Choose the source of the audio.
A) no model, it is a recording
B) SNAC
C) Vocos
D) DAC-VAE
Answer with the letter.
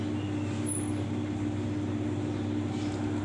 A